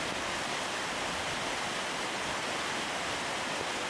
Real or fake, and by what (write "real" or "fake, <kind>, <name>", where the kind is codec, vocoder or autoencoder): real